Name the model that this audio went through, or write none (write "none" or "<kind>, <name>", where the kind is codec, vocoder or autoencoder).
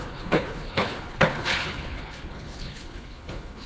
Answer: codec, HILCodec